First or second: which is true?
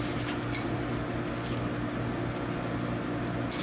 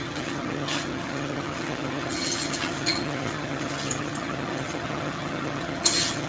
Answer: first